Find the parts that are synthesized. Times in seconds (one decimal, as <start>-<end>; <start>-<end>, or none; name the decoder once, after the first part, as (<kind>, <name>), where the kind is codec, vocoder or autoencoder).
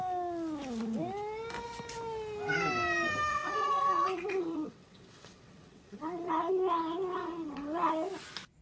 3.3-6.5 (vocoder, WaveNeXt); 7.1-7.9